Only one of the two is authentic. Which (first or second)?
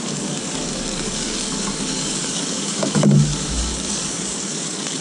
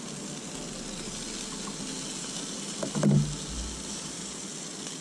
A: second